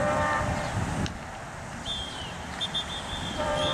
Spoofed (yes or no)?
yes